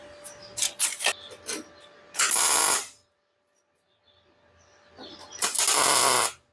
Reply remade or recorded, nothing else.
recorded